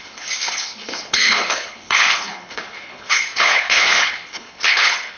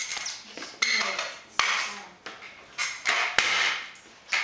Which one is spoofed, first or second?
first